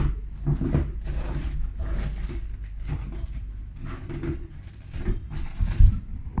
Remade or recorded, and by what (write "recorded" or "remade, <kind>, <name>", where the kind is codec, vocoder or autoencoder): recorded